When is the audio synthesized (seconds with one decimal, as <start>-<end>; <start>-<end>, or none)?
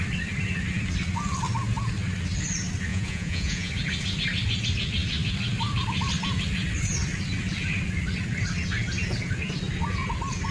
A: 2.9-3.7